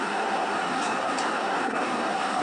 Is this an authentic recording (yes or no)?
no